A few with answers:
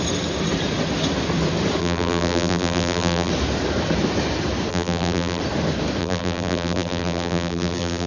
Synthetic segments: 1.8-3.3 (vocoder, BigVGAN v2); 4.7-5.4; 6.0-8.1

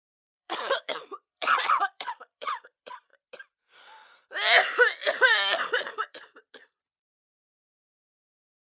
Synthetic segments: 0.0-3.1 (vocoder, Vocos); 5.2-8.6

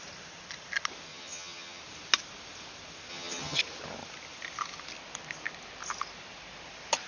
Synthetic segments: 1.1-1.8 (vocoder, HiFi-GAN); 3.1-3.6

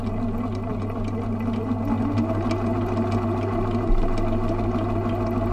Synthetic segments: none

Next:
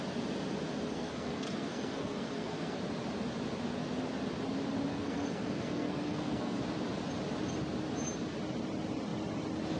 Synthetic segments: 0.9-2.8 (codec, SNAC); 4.9-6.6